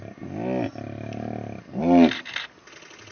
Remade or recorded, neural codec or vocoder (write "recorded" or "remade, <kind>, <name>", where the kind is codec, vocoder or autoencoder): recorded